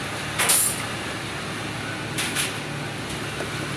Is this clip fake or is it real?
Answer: real